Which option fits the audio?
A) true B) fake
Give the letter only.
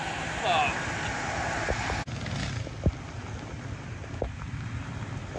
A